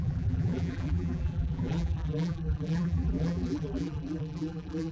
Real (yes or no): no